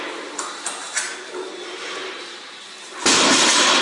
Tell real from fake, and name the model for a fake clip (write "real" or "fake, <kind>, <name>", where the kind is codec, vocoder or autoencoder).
real